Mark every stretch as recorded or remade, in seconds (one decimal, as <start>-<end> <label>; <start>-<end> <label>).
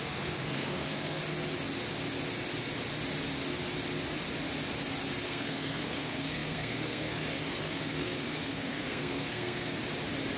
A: 0.0-1.2 remade; 1.2-5.2 recorded; 5.2-9.8 remade; 9.8-10.4 recorded